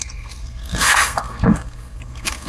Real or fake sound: fake